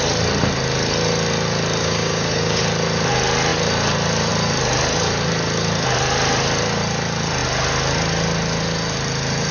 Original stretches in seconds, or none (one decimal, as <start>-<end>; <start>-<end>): 0.0-1.8; 2.6-9.5